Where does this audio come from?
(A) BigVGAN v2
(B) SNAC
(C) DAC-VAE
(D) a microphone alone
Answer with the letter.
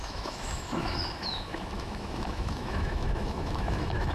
C